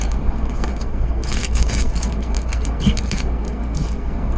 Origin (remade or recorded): remade